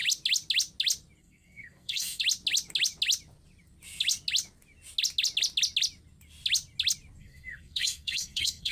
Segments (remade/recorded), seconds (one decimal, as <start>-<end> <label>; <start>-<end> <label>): 0.0-1.2 recorded; 1.2-2.2 remade; 2.2-7.2 recorded; 7.2-8.7 remade